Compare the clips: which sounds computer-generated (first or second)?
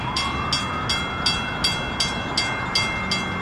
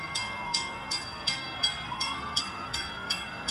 second